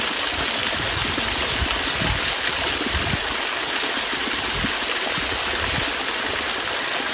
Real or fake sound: fake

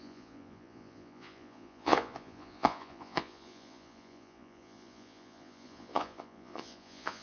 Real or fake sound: fake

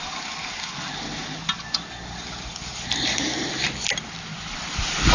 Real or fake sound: real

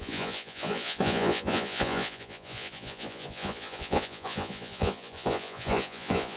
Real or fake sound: fake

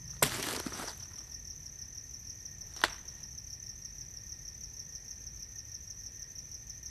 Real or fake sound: real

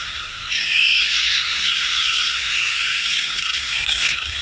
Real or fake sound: fake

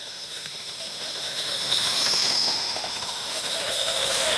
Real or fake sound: fake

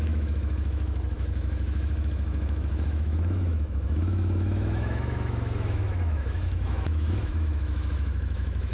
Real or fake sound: fake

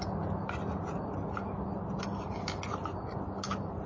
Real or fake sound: real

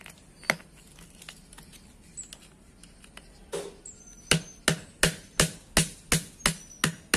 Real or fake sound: real